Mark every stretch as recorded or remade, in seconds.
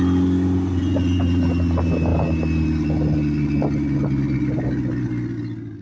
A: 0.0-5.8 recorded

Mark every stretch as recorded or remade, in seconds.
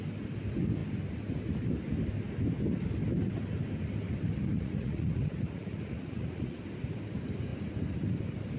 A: 0.0-4.5 recorded; 4.5-6.6 remade; 6.6-8.6 recorded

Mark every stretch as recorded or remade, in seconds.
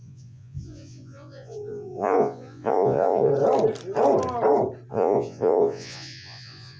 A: 0.0-3.3 remade; 3.3-4.9 recorded; 4.9-6.8 remade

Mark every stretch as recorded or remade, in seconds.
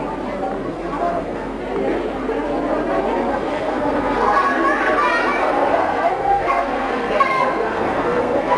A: 0.0-0.6 recorded; 0.6-1.6 remade; 1.6-3.3 recorded; 3.3-4.6 remade; 4.6-5.4 recorded; 5.4-8.6 remade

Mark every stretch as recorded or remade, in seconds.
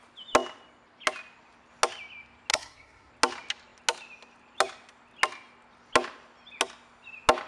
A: 0.0-2.5 recorded; 2.5-3.1 remade; 3.1-7.5 recorded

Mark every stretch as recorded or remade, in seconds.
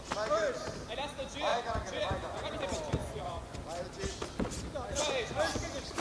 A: 0.0-1.5 recorded; 1.5-2.6 remade; 2.6-3.0 recorded; 3.0-3.6 remade; 3.6-6.0 recorded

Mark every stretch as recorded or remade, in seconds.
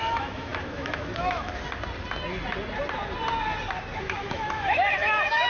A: 0.0-1.5 remade; 1.5-4.0 recorded; 4.0-5.5 remade